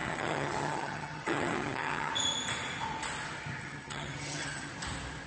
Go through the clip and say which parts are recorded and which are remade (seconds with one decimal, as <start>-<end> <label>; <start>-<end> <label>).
0.0-2.1 remade; 2.1-3.6 recorded; 3.6-4.7 remade; 4.7-5.3 recorded